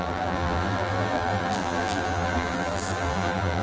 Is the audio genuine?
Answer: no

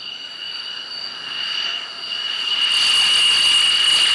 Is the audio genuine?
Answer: yes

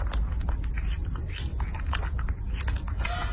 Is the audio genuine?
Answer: yes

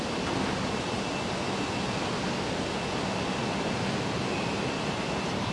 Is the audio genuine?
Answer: yes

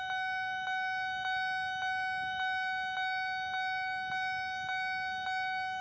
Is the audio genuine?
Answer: yes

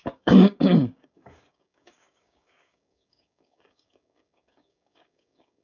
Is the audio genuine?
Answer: no